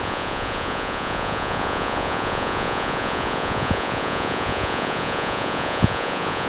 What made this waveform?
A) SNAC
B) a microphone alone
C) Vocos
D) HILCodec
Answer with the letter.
C